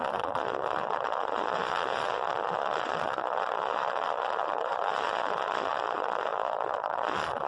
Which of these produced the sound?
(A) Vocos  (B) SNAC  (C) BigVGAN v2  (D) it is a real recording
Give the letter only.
A